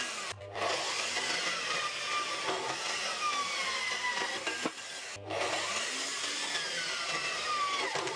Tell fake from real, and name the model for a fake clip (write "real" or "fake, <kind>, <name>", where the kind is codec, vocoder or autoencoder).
real